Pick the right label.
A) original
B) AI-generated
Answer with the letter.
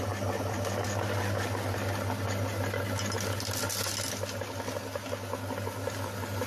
A